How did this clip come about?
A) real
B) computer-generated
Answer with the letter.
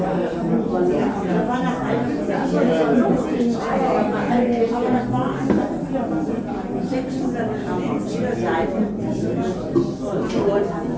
A